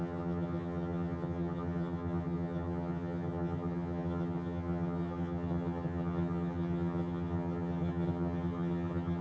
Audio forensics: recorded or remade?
remade